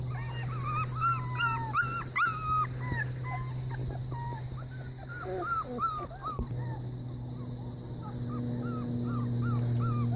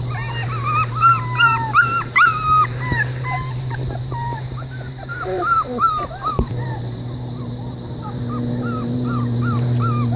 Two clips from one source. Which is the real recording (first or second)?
first